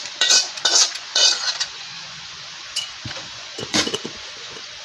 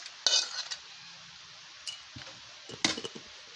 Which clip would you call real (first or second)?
second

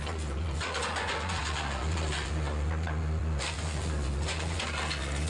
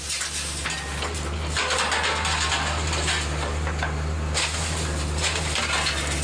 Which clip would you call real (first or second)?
second